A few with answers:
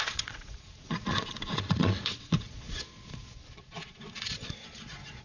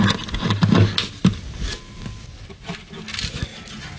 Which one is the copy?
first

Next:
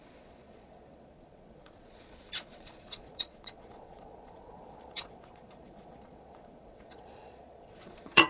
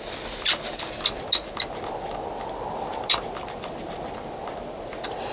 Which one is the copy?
first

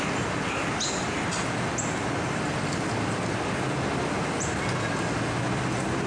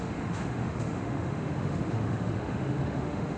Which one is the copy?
second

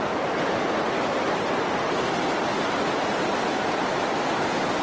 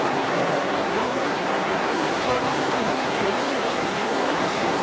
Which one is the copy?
second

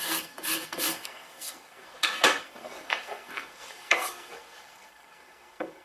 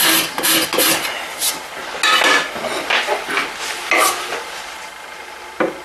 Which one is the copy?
first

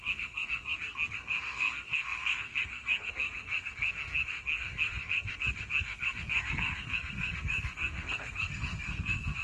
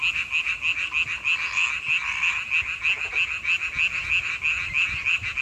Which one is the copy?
first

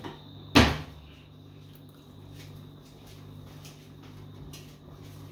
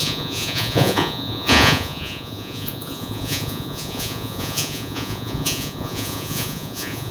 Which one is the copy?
second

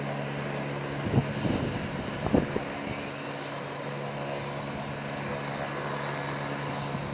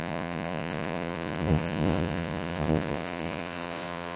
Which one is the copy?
second